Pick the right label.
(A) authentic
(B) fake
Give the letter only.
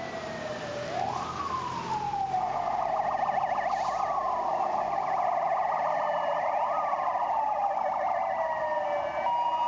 A